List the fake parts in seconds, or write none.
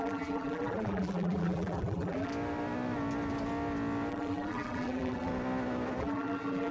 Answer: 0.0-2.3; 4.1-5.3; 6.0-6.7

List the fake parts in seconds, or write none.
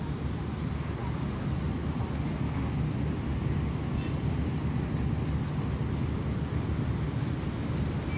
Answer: none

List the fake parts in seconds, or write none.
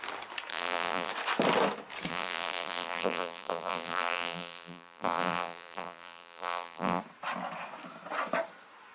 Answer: 0.5-1.1; 2.1-7.0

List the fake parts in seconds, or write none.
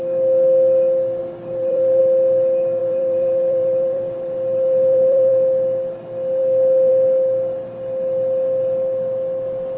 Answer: 1.2-2.0; 2.8-5.3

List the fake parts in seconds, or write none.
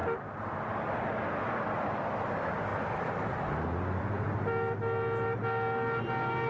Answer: 2.7-4.0